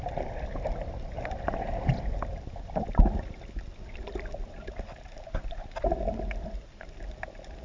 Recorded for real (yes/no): yes